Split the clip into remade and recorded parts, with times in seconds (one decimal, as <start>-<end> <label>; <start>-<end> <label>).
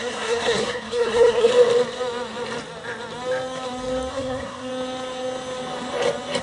0.0-1.5 remade; 1.5-4.1 recorded; 4.1-4.7 remade; 4.7-6.4 recorded